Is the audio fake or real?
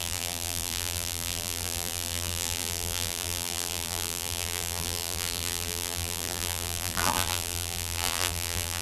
fake